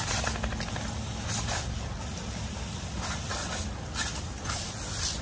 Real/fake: real